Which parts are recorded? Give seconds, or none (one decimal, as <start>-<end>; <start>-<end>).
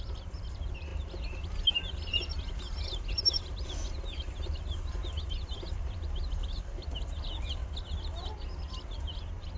0.9-3.1; 7.6-9.0